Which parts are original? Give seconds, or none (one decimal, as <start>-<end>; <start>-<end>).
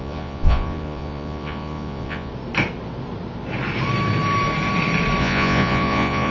2.3-5.2